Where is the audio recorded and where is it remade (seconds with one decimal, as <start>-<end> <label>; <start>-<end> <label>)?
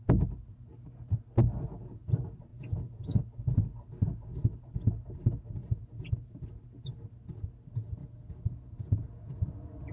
0.0-2.5 recorded; 2.5-3.2 remade; 3.2-5.6 recorded; 5.6-6.5 remade; 6.5-8.0 recorded; 8.0-9.4 remade; 9.4-9.9 recorded